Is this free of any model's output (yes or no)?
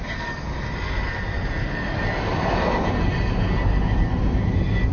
yes